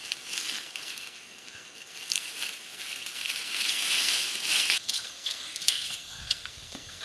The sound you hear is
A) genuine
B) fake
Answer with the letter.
B